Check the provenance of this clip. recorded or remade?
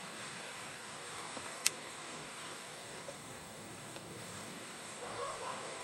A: remade